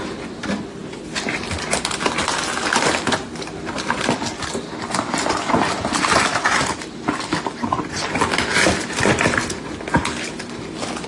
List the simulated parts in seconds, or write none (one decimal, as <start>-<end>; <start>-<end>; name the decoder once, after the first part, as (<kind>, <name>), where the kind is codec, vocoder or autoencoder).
none